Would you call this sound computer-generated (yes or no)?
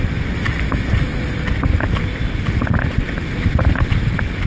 no